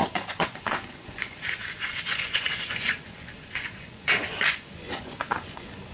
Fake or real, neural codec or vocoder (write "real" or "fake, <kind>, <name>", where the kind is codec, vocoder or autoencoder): fake, vocoder, Vocos